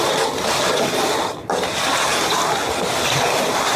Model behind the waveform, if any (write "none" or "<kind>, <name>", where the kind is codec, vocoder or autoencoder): none